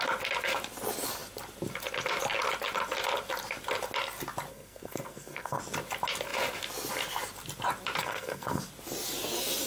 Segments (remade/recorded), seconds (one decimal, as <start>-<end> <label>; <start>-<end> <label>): 0.0-4.5 recorded; 4.5-5.6 remade; 5.6-8.0 recorded; 8.0-8.6 remade; 8.6-9.7 recorded